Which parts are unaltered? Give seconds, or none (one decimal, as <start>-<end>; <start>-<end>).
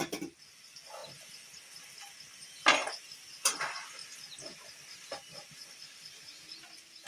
0.0-7.1